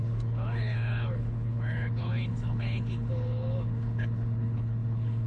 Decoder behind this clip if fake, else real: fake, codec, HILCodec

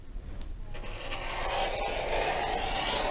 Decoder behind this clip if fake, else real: real